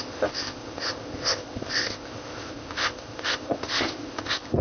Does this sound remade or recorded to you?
remade